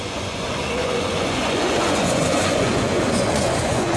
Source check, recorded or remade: remade